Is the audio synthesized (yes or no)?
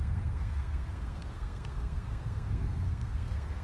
yes